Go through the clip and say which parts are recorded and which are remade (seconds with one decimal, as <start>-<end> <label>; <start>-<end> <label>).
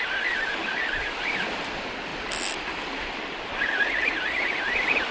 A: 0.0-5.1 recorded